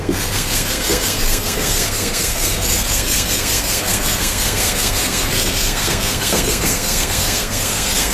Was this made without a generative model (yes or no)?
no